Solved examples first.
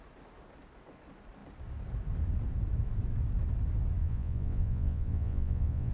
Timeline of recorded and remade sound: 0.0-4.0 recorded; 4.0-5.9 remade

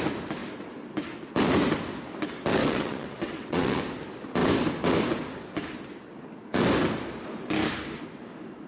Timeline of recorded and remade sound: 0.0-2.6 recorded; 2.6-3.8 remade; 3.8-8.7 recorded

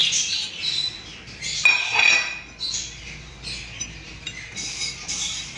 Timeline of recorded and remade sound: 0.0-5.6 recorded